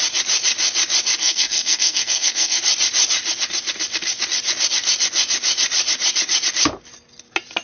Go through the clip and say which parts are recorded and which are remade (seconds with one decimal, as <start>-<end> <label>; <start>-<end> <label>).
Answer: 0.0-1.2 recorded; 1.2-2.6 remade; 2.6-7.6 recorded

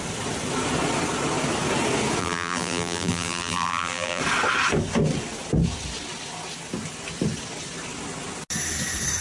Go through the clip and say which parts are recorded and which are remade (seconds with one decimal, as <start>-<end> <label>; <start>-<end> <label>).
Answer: 0.0-2.2 recorded; 2.2-4.2 remade; 4.2-9.2 recorded

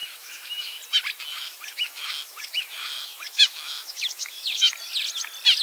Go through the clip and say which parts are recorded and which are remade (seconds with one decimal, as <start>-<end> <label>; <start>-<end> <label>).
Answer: 0.0-0.8 remade; 0.8-1.3 recorded; 1.3-4.7 remade; 4.7-5.6 recorded

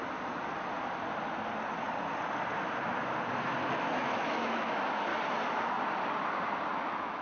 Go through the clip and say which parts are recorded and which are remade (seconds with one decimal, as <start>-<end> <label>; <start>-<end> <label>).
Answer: 0.0-3.7 recorded; 3.7-5.1 remade; 5.1-6.7 recorded; 6.7-7.2 remade

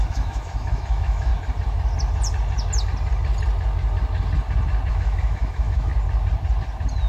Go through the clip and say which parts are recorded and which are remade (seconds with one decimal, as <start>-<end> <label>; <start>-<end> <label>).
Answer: 0.0-1.3 remade; 1.3-4.9 recorded; 4.9-5.9 remade; 5.9-7.1 recorded

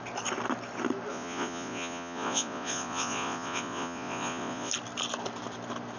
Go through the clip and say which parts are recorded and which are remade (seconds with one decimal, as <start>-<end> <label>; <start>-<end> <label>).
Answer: 0.0-1.1 recorded; 1.1-4.7 remade; 4.7-6.0 recorded

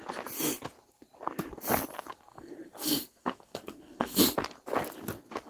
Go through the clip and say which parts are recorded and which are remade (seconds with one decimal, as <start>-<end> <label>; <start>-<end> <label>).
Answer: 0.0-2.3 recorded; 2.3-4.2 remade; 4.2-5.5 recorded

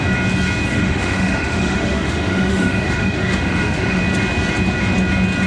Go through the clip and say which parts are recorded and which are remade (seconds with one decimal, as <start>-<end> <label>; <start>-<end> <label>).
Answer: 0.0-0.7 recorded; 0.7-4.0 remade; 4.0-5.5 recorded